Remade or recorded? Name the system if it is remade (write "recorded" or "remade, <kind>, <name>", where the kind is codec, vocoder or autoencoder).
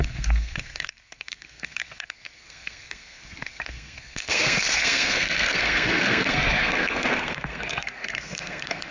remade, codec, SNAC